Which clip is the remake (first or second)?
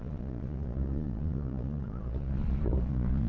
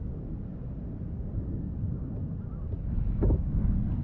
first